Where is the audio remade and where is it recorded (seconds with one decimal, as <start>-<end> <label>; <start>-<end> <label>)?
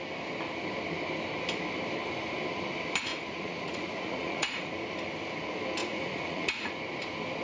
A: 0.0-3.1 recorded; 3.1-4.7 remade; 4.7-5.8 recorded; 5.8-6.7 remade; 6.7-7.4 recorded